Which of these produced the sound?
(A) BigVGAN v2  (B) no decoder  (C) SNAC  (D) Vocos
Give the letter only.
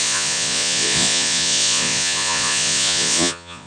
D